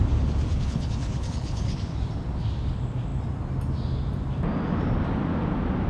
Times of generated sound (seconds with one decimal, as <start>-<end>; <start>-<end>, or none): 0.5-1.8